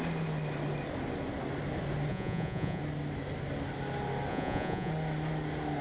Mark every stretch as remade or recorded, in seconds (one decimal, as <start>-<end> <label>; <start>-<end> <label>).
0.0-2.1 recorded; 2.1-2.8 remade; 2.8-4.3 recorded; 4.3-4.9 remade; 4.9-5.8 recorded